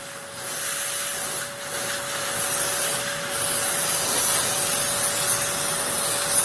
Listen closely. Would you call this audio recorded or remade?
recorded